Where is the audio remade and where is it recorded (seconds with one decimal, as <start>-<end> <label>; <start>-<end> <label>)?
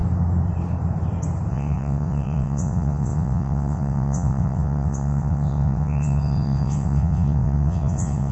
0.0-1.5 recorded; 1.5-8.3 remade